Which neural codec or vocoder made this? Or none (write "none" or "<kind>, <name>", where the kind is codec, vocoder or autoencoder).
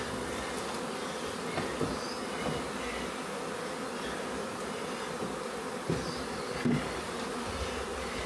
none